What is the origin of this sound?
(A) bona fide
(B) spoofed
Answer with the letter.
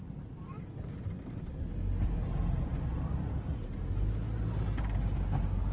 A